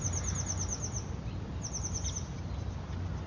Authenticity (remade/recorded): recorded